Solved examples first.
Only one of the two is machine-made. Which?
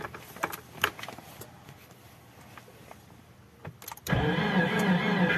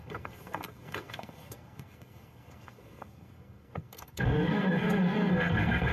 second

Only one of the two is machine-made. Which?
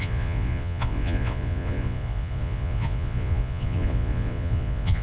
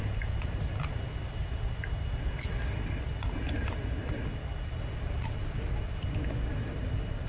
first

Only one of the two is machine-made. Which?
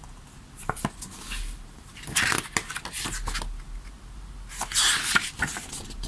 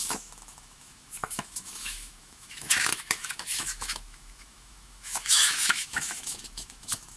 second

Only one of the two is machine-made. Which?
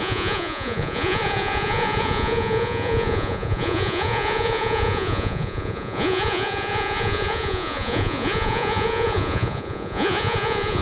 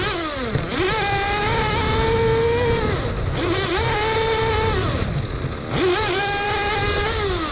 first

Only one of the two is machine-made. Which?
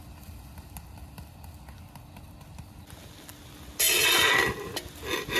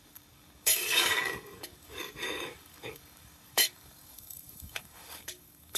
second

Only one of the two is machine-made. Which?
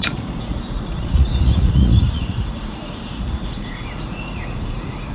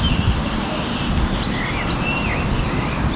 first